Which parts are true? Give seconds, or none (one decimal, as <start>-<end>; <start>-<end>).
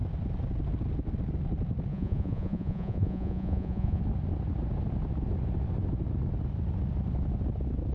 0.0-1.9; 4.0-7.9